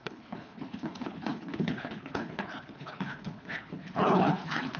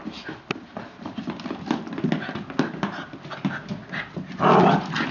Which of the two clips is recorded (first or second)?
second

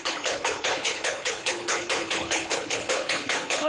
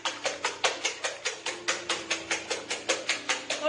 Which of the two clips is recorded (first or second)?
second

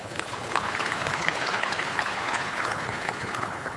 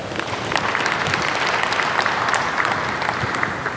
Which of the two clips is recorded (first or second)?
second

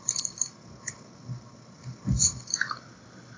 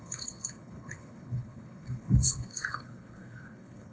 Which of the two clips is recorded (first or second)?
first